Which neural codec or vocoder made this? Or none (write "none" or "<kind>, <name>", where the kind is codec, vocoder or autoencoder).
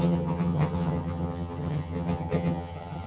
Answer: vocoder, HiFi-GAN